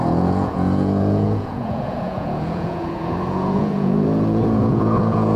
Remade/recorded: remade